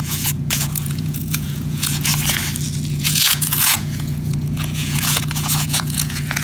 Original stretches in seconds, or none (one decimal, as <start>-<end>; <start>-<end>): 2.1-2.9

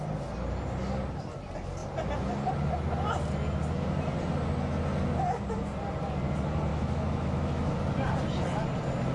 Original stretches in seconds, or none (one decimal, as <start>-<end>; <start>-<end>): 0.0-6.7; 7.7-9.1

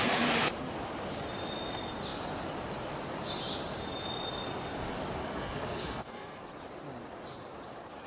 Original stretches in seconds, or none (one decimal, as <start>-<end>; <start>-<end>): 0.0-5.2; 6.4-8.1